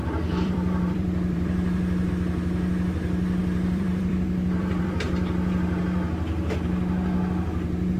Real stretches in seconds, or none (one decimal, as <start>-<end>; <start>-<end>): 2.1-3.4; 5.8-8.0